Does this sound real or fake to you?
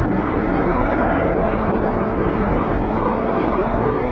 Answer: fake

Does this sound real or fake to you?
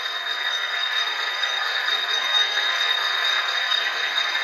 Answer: fake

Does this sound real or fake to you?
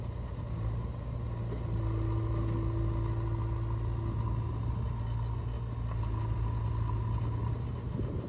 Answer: real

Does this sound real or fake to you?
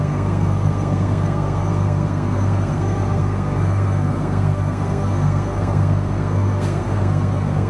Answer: fake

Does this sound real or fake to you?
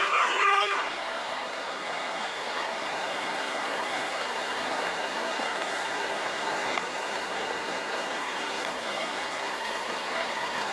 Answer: fake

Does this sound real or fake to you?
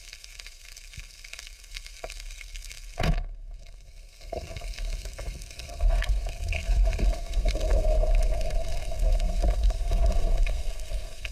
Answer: fake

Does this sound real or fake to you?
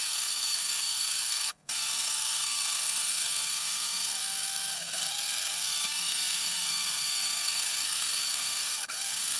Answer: fake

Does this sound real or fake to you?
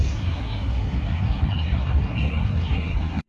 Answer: fake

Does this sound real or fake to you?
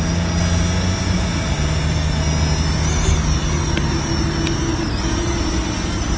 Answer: real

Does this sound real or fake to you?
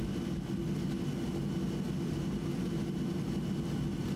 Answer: real